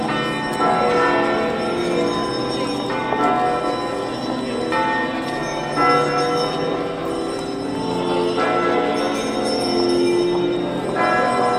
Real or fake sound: real